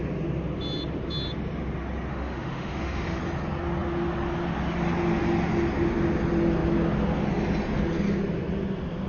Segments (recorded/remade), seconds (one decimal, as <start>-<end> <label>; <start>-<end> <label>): 0.0-2.1 recorded; 2.1-3.2 remade; 3.2-9.1 recorded